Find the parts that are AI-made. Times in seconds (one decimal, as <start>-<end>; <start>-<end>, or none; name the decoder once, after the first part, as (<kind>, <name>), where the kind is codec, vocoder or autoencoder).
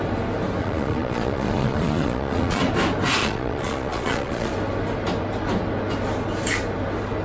0.6-2.6 (vocoder, Vocos); 3.2-4.5